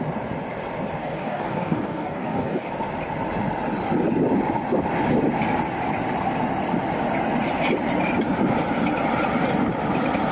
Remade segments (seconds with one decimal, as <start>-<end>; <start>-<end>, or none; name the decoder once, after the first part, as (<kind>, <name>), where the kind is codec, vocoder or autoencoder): 1.0-2.7 (codec, DAC)